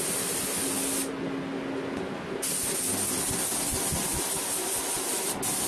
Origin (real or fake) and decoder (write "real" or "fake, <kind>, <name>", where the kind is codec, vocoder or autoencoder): real